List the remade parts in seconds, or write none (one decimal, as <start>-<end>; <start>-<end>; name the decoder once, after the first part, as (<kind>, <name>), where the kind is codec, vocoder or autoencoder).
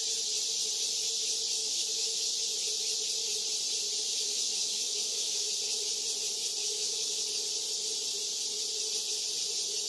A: 1.6-2.3 (autoencoder, DAC-VAE); 4.1-5.5; 6.6-7.2